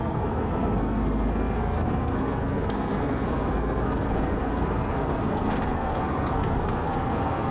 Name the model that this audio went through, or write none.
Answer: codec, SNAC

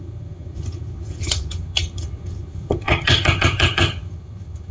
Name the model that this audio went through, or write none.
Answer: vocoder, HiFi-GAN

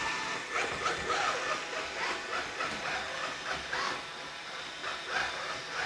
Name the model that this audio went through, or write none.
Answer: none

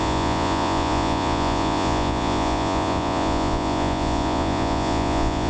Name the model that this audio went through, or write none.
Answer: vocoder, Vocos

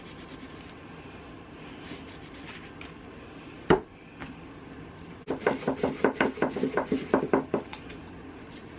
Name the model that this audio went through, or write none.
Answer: none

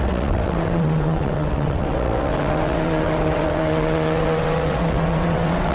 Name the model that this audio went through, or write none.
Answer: vocoder, WaveNeXt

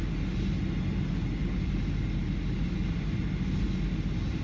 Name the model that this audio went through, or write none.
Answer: none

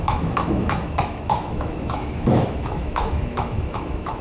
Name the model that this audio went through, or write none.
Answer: autoencoder, DAC-VAE